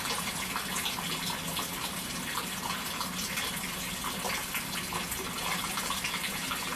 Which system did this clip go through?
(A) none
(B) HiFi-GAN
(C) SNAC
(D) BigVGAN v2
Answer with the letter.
D